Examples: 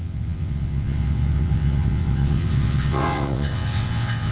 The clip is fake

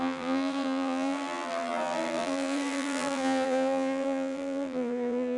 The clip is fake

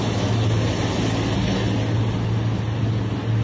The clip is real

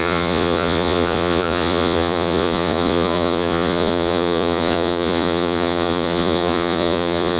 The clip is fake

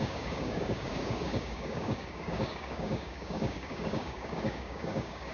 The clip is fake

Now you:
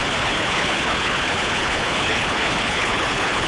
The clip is fake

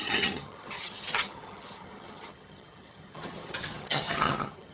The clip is fake